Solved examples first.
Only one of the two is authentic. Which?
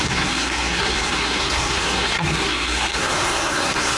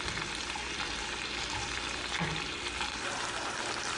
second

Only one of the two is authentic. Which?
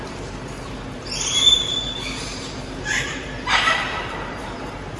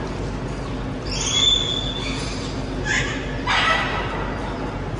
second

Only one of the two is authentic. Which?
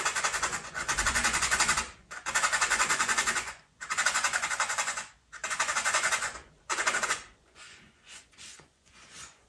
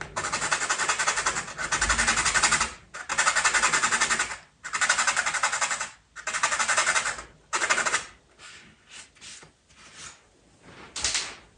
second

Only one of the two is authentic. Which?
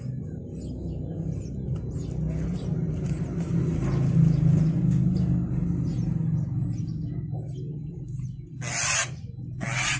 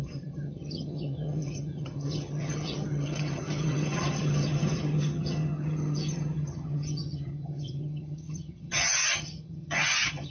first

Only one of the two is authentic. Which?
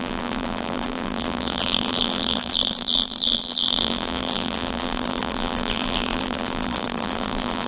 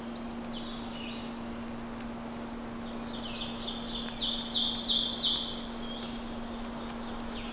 second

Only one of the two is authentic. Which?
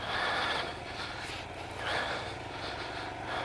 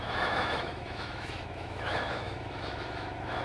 first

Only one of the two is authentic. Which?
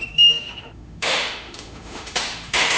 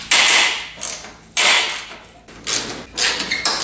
second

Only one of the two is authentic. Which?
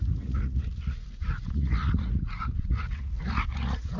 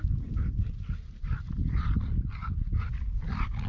second